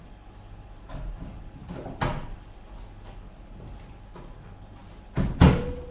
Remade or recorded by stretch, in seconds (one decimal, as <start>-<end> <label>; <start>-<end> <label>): 0.0-5.9 recorded